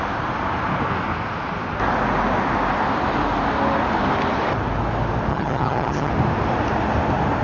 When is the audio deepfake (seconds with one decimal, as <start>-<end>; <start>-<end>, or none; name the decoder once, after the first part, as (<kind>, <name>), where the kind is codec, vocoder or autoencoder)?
5.3-6.1 (vocoder, HiFi-GAN)